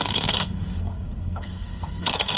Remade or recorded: remade